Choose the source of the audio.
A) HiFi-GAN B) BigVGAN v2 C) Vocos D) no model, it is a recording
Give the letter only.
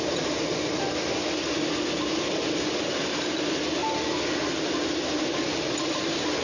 D